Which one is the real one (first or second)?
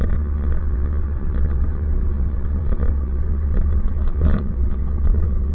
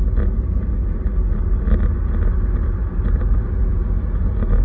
second